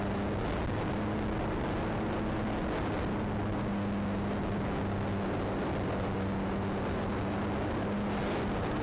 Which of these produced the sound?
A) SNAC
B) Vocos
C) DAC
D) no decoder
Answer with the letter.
D